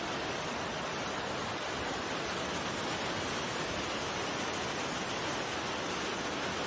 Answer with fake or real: real